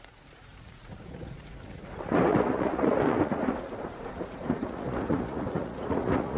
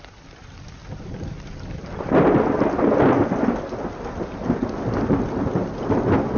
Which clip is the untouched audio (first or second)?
second